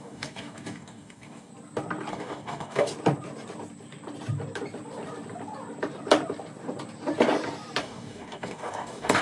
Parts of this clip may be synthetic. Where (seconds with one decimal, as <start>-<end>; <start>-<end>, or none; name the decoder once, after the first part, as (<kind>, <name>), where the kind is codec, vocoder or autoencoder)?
0.0-1.5 (codec, DAC); 2.1-2.9; 7.8-9.2